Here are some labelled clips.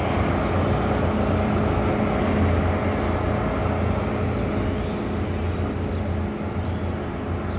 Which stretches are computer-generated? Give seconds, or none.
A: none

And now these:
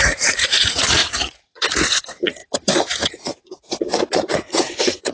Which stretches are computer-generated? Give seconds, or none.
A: 0.0-5.1 (vocoder, Vocos)

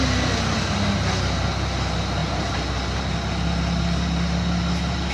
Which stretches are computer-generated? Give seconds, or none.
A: none